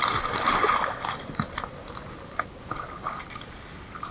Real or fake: real